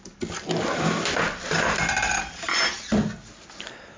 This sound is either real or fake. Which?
real